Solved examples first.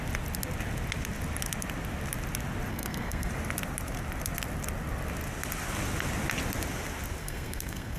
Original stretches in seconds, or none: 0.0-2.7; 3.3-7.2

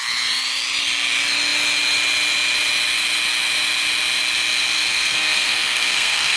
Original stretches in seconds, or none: 0.0-4.9

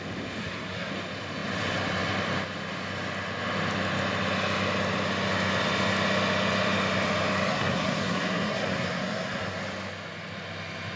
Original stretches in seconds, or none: 0.0-0.4; 0.9-7.5; 9.6-11.0

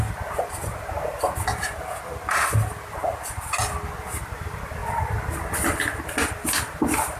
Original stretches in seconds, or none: 0.0-7.2

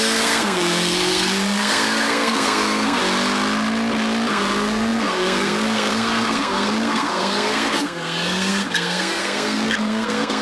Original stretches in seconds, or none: 3.0-4.3

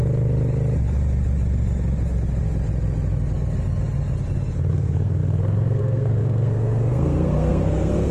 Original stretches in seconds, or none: 0.0-4.7